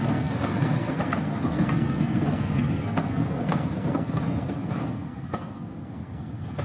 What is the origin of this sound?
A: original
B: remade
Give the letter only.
B